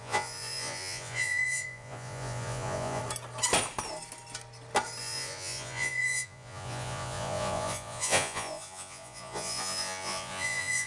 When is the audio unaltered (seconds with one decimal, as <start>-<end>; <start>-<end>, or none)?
3.0-5.0